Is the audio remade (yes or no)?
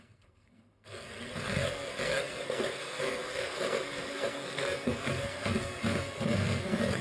yes